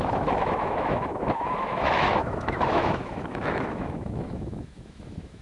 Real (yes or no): no